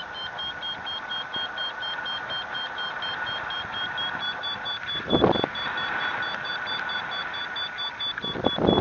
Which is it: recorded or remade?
recorded